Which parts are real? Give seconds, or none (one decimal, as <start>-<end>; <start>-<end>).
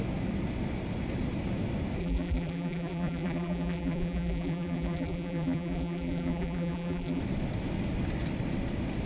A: 0.0-2.0; 7.2-9.1